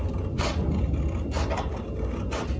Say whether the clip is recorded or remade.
recorded